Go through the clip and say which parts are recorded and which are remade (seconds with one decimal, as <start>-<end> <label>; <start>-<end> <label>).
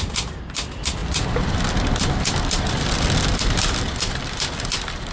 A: 0.0-1.0 recorded; 1.0-4.1 remade; 4.1-5.1 recorded